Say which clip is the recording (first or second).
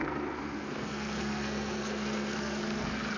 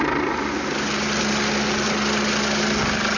second